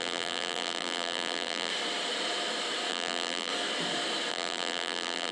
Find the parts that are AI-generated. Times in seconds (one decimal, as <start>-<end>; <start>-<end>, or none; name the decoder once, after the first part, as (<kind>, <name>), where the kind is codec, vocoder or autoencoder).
0.0-1.7 (vocoder, BigVGAN v2); 2.9-3.5; 4.3-5.3